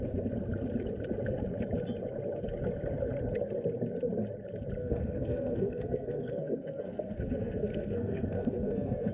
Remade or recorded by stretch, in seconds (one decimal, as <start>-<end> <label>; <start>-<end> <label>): 0.0-4.8 recorded; 4.8-9.1 remade